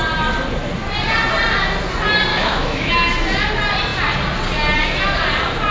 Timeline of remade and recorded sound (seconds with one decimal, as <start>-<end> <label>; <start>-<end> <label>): 0.0-2.3 recorded; 2.3-2.9 remade; 2.9-5.7 recorded